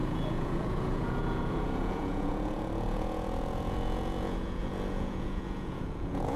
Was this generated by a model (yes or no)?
yes